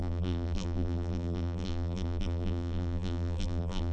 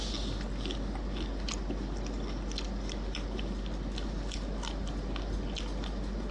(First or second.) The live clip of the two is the second